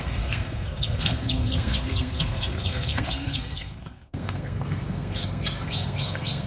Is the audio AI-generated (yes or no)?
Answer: yes